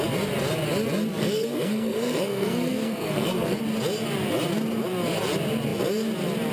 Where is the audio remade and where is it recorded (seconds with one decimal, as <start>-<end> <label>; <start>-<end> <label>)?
0.0-1.2 recorded; 1.2-3.6 remade; 3.6-6.5 recorded